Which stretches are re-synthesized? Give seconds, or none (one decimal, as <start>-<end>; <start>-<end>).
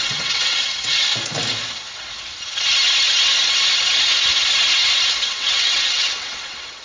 0.0-1.1; 5.2-6.8